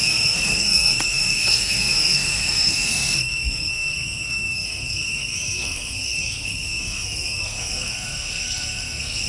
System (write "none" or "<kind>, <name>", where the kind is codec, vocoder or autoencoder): codec, SNAC